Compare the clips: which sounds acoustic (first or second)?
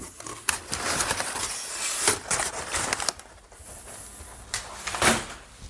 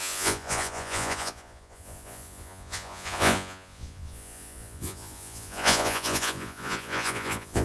first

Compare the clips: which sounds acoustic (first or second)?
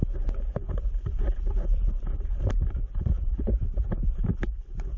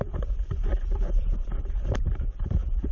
first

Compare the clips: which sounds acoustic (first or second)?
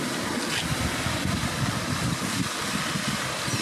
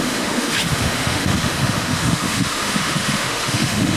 first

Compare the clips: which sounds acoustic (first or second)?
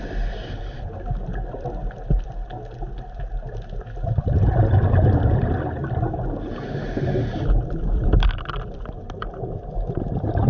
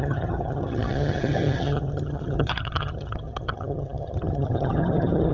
first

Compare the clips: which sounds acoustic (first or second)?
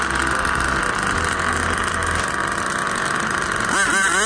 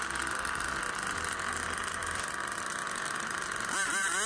first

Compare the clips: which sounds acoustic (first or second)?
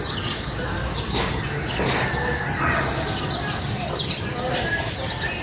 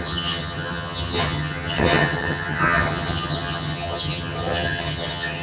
first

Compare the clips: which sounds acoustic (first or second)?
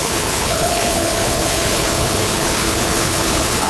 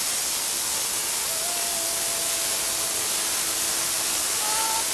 second